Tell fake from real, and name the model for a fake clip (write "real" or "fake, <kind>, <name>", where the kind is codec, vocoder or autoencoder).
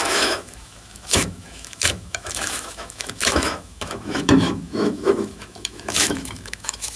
fake, autoencoder, DAC-VAE